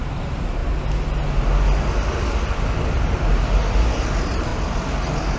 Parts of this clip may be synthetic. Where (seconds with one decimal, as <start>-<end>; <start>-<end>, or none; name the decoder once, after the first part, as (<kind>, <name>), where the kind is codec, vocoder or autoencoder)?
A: 0.0-0.6 (vocoder, BigVGAN v2); 3.8-4.5